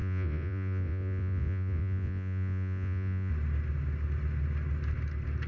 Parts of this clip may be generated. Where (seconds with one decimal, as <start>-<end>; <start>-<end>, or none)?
0.0-3.3